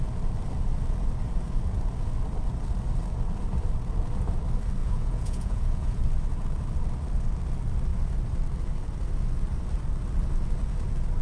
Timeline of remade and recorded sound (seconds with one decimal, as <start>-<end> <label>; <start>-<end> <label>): 0.0-4.8 recorded; 4.8-6.0 remade; 6.0-11.2 recorded